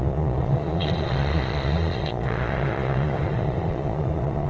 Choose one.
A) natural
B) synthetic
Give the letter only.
B